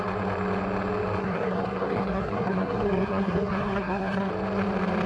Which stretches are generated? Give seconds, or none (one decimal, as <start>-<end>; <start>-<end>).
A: 1.2-4.3